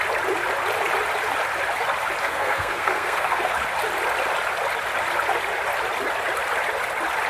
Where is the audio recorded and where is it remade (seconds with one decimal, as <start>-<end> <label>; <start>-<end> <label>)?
0.0-2.2 recorded; 2.2-3.5 remade; 3.5-7.3 recorded